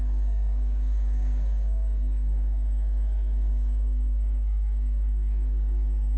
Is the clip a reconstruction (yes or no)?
yes